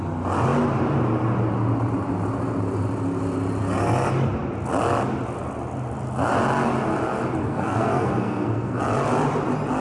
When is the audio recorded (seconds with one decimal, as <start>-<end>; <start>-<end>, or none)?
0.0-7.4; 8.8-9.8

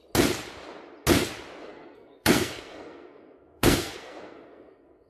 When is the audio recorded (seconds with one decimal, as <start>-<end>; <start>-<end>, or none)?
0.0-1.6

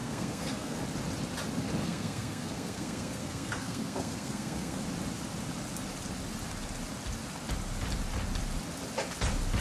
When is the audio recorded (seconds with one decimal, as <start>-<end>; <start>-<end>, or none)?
0.8-1.8; 4.8-9.6